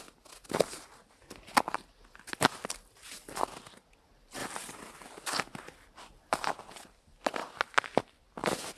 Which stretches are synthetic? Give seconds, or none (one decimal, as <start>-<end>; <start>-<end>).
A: none